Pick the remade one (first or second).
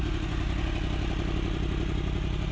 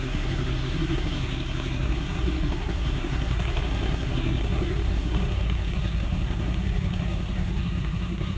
second